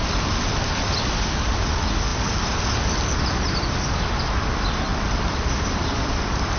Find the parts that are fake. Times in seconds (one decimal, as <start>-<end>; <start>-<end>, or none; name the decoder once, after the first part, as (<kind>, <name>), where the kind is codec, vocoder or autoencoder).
2.1-3.9 (vocoder, BigVGAN v2); 4.9-6.6